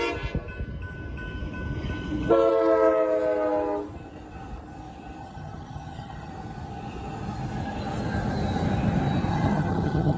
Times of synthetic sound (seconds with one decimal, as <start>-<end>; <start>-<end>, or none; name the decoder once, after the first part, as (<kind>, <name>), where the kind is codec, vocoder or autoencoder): 5.2-6.3 (vocoder, HiFi-GAN); 9.3-10.2